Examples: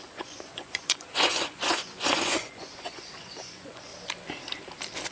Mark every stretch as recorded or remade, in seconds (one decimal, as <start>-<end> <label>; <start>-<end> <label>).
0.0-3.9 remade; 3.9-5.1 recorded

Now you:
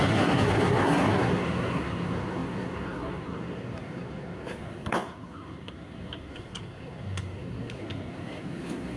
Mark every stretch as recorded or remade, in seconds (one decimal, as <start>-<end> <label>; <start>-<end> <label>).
0.0-9.0 remade

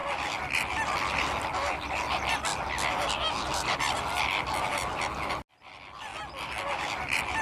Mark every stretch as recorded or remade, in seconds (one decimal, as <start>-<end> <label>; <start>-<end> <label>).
0.0-7.4 recorded